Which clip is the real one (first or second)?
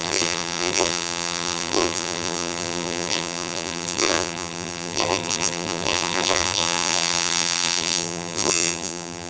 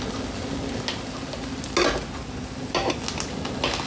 second